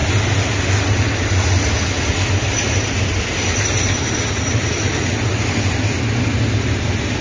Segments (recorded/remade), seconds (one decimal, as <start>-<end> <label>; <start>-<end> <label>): 0.0-7.2 recorded

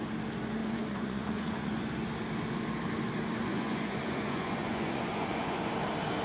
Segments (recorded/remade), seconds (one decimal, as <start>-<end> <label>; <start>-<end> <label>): 0.0-0.6 recorded; 0.6-1.9 remade; 1.9-3.4 recorded; 3.4-5.7 remade; 5.7-6.2 recorded

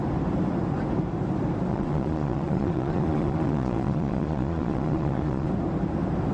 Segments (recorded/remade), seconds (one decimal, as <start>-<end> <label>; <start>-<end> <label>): 0.0-1.7 recorded; 1.7-5.5 remade; 5.5-6.3 recorded

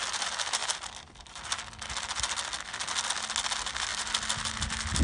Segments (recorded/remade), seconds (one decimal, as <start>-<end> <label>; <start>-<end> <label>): 0.0-5.0 recorded

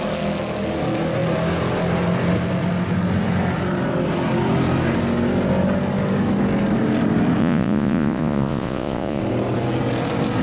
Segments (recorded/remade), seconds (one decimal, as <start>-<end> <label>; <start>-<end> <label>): 0.0-7.4 recorded; 7.4-9.2 remade; 9.2-10.4 recorded

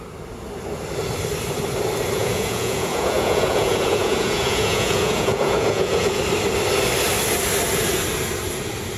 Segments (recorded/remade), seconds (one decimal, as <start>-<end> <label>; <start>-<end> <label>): 0.0-2.2 recorded; 2.2-6.2 remade; 6.2-9.0 recorded

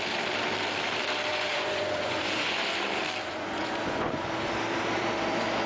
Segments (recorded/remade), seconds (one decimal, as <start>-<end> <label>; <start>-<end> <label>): 0.0-1.3 recorded; 1.3-2.8 remade; 2.8-3.2 recorded; 3.2-4.3 remade; 4.3-5.7 recorded